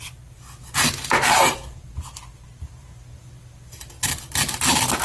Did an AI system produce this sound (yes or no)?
no